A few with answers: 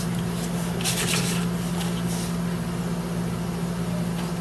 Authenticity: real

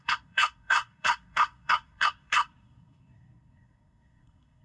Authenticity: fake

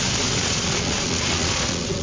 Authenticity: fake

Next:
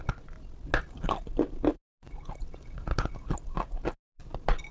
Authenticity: real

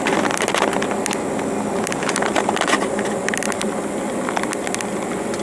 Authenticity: real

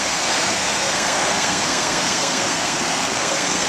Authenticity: fake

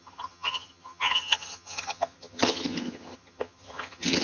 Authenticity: fake